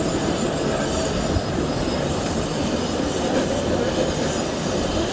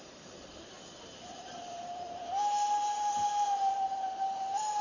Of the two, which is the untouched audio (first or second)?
first